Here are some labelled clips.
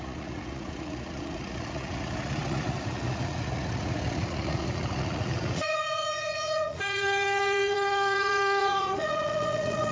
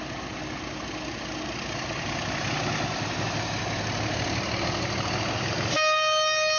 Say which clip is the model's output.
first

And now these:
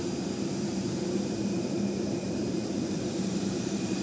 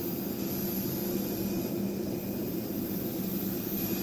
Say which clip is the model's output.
first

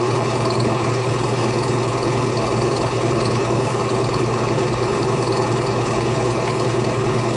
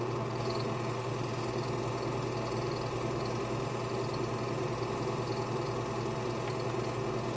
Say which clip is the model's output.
first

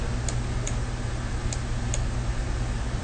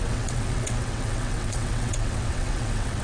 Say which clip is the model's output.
second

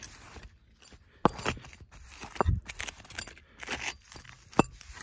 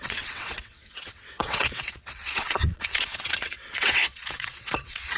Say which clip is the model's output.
second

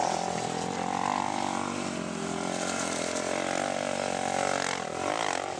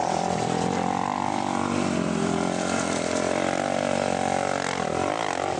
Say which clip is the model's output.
second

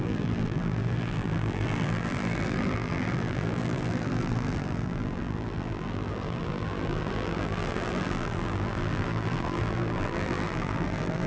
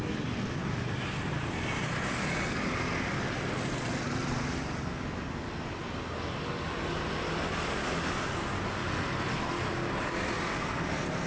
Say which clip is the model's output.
first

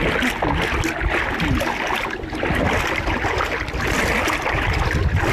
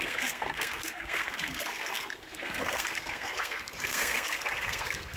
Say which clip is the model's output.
second